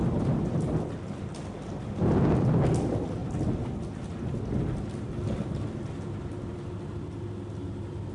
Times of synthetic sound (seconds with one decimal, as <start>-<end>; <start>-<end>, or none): none